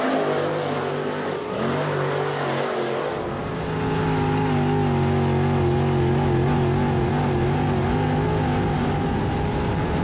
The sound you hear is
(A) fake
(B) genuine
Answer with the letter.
B